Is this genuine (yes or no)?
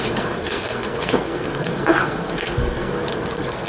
no